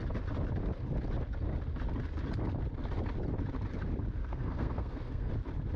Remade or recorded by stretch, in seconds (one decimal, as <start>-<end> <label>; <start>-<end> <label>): 0.0-4.2 recorded; 4.2-5.3 remade; 5.3-5.8 recorded